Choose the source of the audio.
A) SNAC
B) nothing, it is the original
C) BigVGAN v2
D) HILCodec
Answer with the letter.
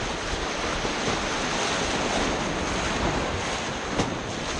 B